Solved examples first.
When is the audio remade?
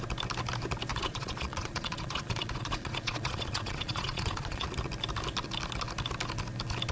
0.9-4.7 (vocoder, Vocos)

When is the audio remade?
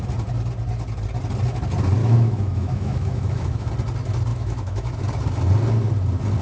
2.0-3.7 (autoencoder, DAC-VAE); 4.3-5.0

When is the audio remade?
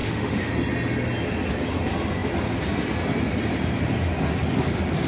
0.0-0.5 (autoencoder, DAC-VAE)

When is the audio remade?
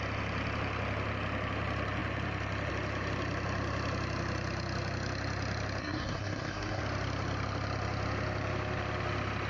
5.8-6.8 (codec, SNAC)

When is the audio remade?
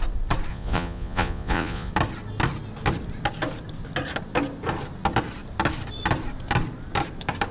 0.5-1.9 (vocoder, Vocos)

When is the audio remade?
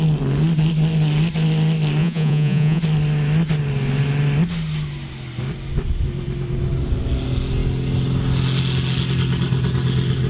2.0-2.8 (vocoder, Vocos)